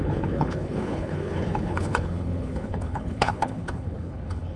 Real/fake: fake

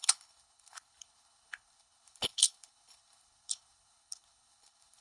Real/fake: fake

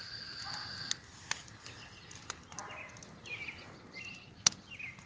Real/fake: real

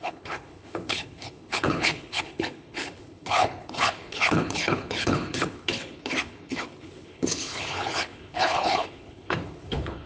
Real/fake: fake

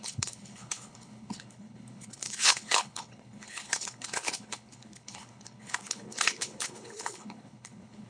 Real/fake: fake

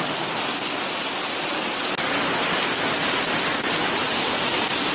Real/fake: real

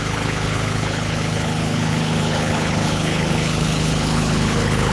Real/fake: fake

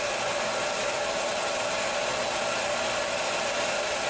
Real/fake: real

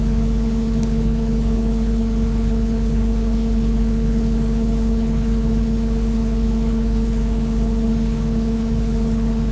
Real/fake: fake